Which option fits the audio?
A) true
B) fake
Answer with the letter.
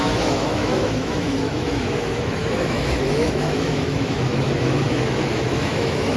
B